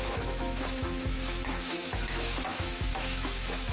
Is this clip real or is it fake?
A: fake